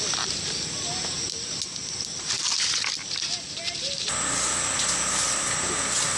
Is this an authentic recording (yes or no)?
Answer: yes